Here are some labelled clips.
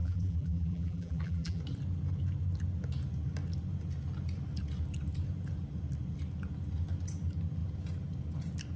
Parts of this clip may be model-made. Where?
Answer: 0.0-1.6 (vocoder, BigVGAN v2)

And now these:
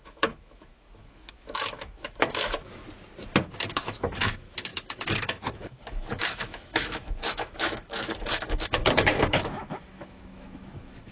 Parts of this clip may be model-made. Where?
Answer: 0.0-2.8 (autoencoder, DAC-VAE); 3.4-11.1

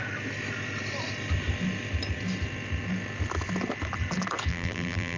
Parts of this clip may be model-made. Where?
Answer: 4.5-5.2 (vocoder, BigVGAN v2)